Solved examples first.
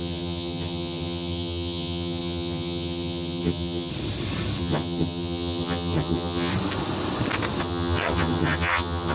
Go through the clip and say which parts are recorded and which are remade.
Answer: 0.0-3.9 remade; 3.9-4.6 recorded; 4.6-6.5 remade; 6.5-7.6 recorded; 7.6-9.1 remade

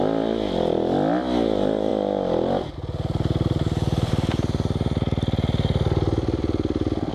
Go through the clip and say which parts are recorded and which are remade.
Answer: 0.0-7.1 recorded